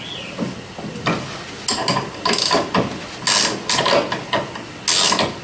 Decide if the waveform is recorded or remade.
recorded